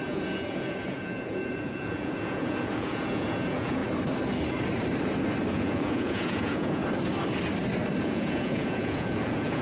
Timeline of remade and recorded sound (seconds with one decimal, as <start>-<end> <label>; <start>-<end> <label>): 0.0-3.8 remade; 3.8-5.5 recorded; 5.5-6.8 remade; 6.8-8.0 recorded; 8.0-9.6 remade